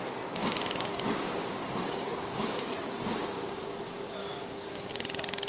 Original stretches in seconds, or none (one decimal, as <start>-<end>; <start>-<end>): 0.0-0.4; 3.7-4.2; 4.9-5.5